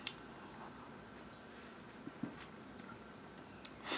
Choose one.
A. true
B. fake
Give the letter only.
A